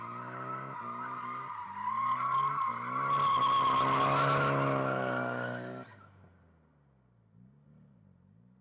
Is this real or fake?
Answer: real